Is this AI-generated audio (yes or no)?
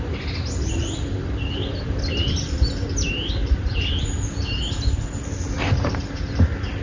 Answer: no